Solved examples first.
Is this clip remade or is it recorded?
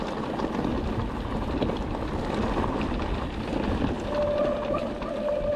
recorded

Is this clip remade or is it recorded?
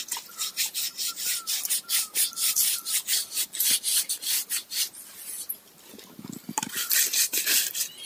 recorded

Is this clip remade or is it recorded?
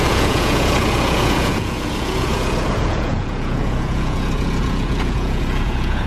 remade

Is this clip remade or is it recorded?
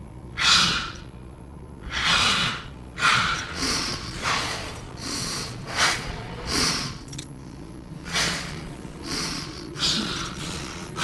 remade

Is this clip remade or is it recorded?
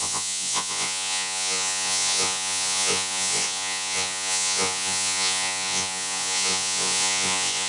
remade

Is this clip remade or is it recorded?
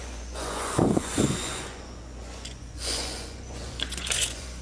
remade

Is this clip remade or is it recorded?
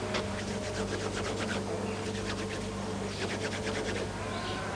recorded